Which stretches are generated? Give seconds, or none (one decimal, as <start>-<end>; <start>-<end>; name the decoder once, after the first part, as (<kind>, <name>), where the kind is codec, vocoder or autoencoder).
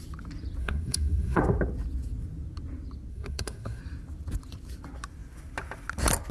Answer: 0.6-1.4 (codec, SNAC); 3.1-3.8